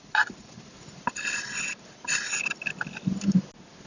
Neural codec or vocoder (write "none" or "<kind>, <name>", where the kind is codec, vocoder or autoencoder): none